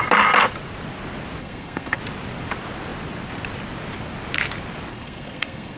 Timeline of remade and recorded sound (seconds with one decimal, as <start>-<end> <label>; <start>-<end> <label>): 0.0-1.4 recorded; 1.4-2.0 remade; 2.0-4.9 recorded; 4.9-5.8 remade